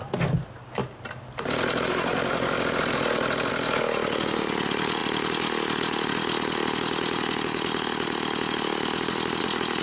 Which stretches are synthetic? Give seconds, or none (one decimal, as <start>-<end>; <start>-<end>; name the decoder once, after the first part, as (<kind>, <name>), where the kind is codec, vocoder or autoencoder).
none